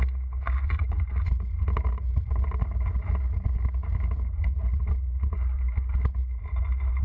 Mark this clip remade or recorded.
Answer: recorded